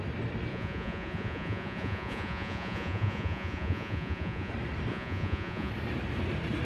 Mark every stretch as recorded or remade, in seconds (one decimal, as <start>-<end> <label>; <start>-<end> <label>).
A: 0.0-0.5 recorded; 0.5-4.5 remade; 4.5-4.9 recorded; 4.9-5.7 remade; 5.7-6.6 recorded